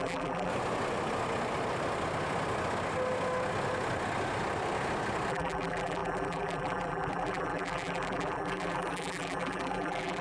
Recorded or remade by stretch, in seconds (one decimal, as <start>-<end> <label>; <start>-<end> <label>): 0.0-0.5 remade; 0.5-5.3 recorded; 5.3-10.2 remade

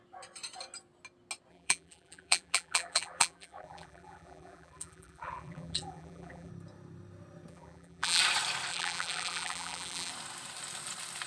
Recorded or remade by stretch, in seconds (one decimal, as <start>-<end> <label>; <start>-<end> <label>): 0.0-1.5 recorded; 1.5-6.5 remade; 6.5-7.5 recorded; 7.5-8.2 remade; 8.2-8.7 recorded; 8.7-10.1 remade; 10.1-11.3 recorded

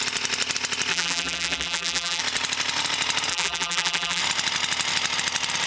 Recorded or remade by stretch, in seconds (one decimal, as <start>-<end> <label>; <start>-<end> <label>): 0.0-0.9 recorded; 0.9-2.2 remade; 2.2-3.3 recorded; 3.3-4.2 remade; 4.2-5.7 recorded